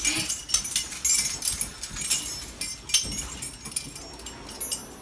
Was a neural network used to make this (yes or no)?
no